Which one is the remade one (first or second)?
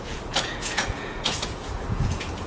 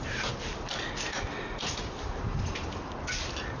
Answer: first